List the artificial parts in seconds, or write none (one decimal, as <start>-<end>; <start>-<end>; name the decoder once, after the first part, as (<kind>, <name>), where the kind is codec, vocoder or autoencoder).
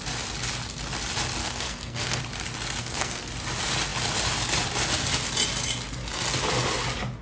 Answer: 1.4-2.2 (codec, SNAC); 2.8-3.3